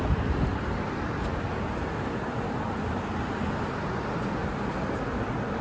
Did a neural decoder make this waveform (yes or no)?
no